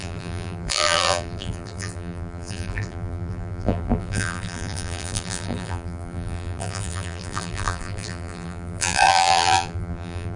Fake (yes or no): yes